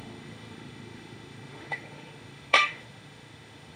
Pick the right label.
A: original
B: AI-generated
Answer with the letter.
B